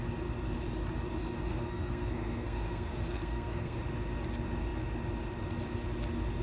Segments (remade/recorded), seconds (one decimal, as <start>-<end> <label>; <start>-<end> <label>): 0.0-1.5 recorded; 1.5-3.8 remade; 3.8-6.4 recorded

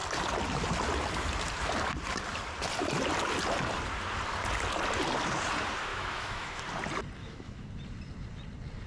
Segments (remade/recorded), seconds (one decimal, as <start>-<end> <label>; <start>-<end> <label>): 0.0-5.9 recorded; 5.9-6.6 remade; 6.6-7.2 recorded; 7.2-7.7 remade; 7.7-8.9 recorded

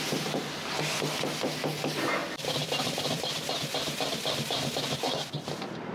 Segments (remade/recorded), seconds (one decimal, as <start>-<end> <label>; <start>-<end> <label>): 0.0-2.2 recorded; 2.2-5.3 remade; 5.3-5.9 recorded

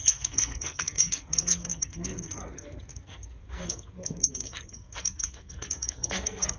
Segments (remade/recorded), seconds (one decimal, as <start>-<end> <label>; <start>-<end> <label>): 0.0-6.6 remade

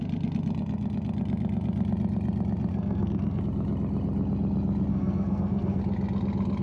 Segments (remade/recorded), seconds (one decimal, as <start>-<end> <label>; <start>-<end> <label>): 0.0-2.7 recorded; 2.7-3.4 remade; 3.4-4.9 recorded; 4.9-5.8 remade; 5.8-6.6 recorded

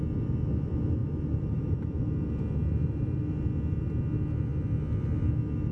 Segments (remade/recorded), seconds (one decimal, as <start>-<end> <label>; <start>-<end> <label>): 0.0-1.0 recorded; 1.0-2.0 remade; 2.0-2.8 recorded; 2.8-3.4 remade; 3.4-5.7 recorded

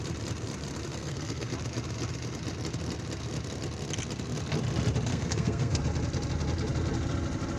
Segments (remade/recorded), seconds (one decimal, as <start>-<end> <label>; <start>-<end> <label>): 0.0-0.9 recorded; 0.9-1.5 remade; 1.5-5.1 recorded; 5.1-5.8 remade; 5.8-7.6 recorded